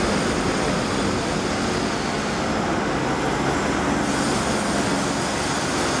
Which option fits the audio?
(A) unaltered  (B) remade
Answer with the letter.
A